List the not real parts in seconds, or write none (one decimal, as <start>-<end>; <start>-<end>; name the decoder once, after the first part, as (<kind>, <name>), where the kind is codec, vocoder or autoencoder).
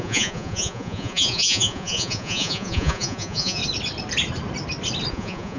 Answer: 0.0-3.6 (vocoder, Vocos); 5.1-5.6